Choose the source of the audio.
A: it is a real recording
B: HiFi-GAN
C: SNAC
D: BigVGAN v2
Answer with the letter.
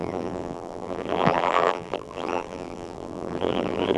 D